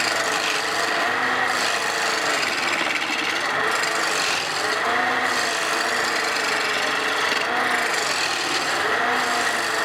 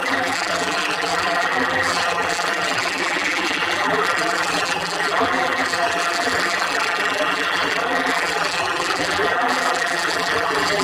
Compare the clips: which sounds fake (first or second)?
second